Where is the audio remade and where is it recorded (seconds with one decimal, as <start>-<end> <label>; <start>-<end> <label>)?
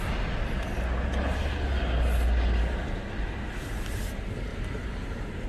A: 0.0-4.5 recorded; 4.5-5.5 remade